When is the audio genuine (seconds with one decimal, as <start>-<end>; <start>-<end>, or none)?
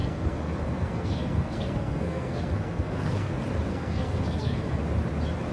3.3-3.7; 4.8-5.5